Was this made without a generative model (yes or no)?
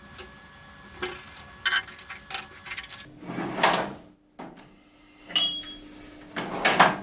yes